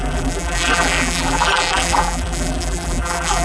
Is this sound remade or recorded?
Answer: remade